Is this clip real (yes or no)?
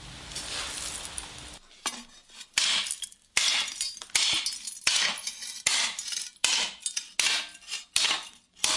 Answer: yes